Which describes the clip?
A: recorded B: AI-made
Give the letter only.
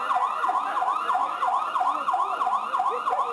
A